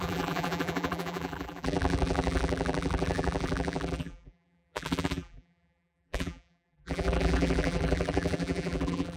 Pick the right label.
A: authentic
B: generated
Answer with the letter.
B